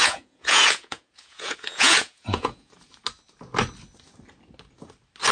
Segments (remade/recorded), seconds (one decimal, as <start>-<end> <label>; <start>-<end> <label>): 0.0-2.7 remade; 2.7-5.3 recorded